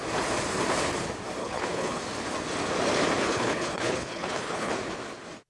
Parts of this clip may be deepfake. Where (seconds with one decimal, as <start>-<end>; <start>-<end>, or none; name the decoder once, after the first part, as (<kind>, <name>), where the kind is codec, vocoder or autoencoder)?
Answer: 1.4-2.0 (codec, HILCodec); 3.3-4.7